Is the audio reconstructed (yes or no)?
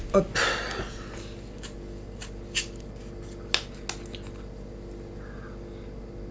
no